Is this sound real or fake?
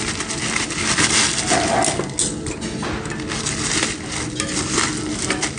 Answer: real